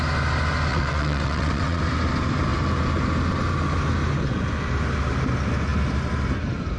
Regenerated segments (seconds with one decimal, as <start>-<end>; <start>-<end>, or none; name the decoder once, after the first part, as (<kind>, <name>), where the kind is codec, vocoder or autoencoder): 0.7-1.8 (vocoder, WaveNeXt)